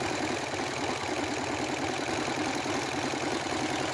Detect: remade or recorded recorded